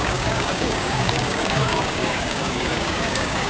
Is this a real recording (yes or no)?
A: no